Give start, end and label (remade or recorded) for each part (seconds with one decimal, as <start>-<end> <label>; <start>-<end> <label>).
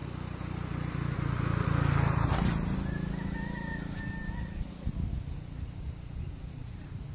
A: 0.0-7.1 recorded